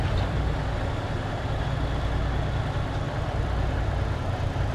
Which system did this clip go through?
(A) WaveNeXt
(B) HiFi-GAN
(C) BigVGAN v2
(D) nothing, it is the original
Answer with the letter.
C